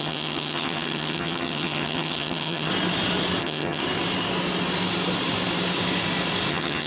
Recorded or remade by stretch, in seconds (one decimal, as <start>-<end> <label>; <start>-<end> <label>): 0.0-2.7 remade; 2.7-3.4 recorded; 3.4-3.8 remade; 3.8-6.5 recorded; 6.5-6.9 remade